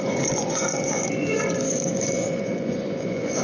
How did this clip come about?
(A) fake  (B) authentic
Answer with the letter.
A